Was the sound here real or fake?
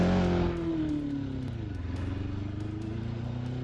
real